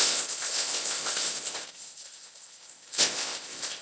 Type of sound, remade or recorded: remade